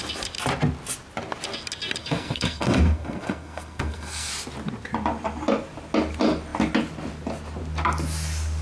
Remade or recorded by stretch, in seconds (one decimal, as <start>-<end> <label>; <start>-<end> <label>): 0.0-2.0 recorded; 2.0-4.3 remade; 4.3-8.6 recorded